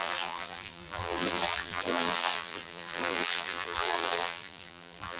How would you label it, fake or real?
fake